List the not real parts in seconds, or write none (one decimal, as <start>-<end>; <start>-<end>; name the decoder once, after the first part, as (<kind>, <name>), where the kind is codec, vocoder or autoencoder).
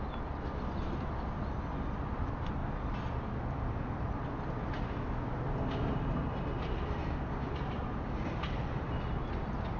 none